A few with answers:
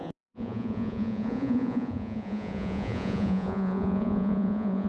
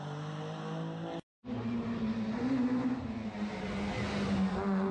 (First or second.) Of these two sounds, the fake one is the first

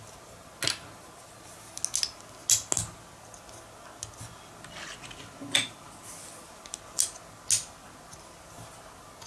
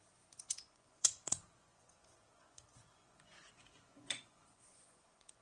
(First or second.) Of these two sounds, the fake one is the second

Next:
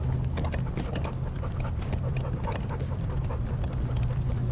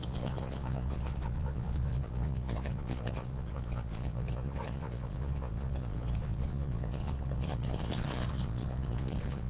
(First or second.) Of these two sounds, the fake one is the second